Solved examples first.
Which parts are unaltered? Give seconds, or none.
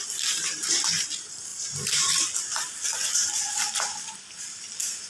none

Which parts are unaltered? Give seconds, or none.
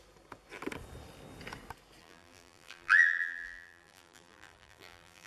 0.0-2.0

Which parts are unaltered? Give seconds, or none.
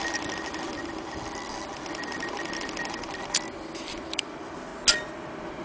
4.7-5.6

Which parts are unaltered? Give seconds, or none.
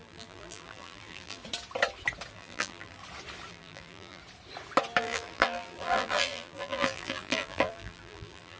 1.4-2.3; 3.0-3.5; 4.2-5.0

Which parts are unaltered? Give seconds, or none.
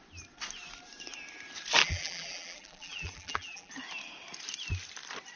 0.0-1.8; 3.7-5.4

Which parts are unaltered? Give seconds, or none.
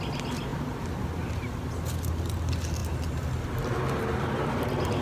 0.0-5.0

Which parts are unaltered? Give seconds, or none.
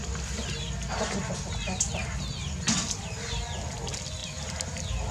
0.0-5.1